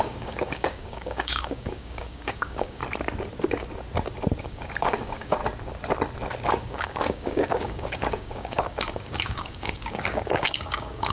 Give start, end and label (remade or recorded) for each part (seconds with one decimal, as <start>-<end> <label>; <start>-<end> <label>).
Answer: 0.0-2.8 remade; 2.8-4.4 recorded; 4.4-5.4 remade; 5.4-6.5 recorded; 6.5-11.1 remade